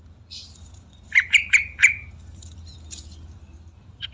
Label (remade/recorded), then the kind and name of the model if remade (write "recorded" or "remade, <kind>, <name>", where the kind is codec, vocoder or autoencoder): remade, vocoder, BigVGAN v2